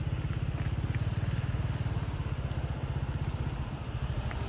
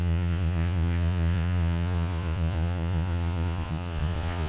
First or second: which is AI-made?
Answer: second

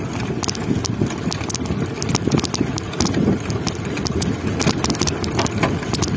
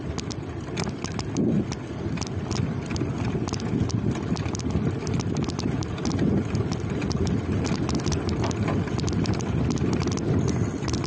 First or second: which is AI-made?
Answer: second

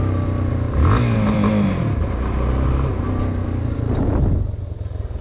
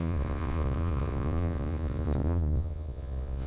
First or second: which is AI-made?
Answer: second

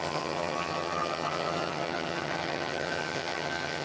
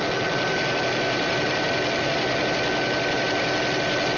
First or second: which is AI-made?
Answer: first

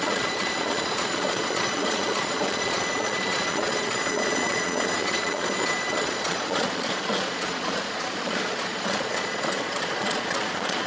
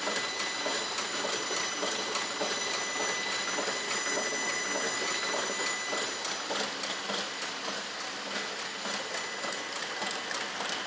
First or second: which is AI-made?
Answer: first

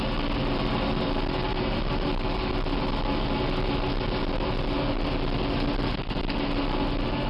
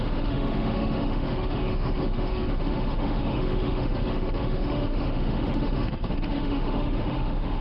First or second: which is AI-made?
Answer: second